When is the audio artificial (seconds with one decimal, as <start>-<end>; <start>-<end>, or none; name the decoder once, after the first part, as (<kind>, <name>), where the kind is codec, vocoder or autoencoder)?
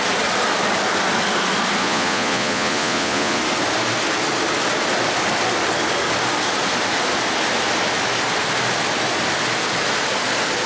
1.8-3.4 (vocoder, Vocos)